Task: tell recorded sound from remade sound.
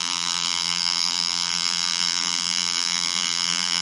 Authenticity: remade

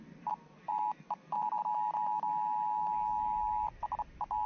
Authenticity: recorded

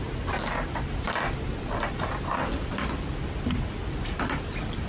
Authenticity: recorded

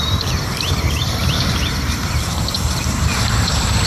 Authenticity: remade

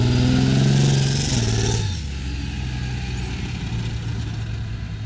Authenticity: recorded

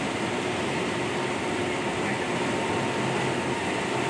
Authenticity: recorded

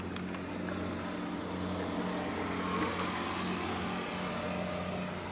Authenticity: recorded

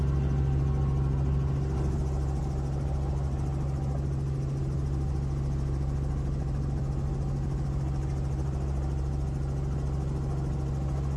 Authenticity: recorded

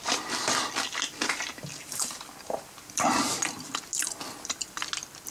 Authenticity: recorded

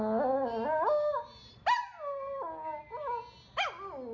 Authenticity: recorded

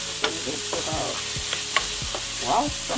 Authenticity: recorded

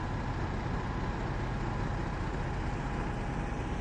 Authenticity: recorded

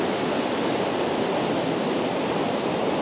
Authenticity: recorded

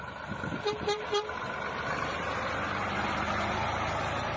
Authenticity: recorded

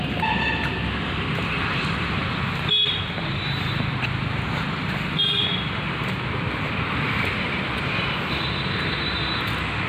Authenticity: recorded